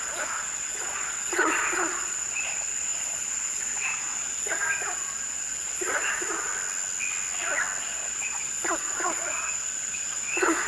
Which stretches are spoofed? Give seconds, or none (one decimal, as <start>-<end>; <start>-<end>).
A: 0.0-6.5; 7.8-10.7